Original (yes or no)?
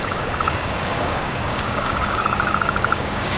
no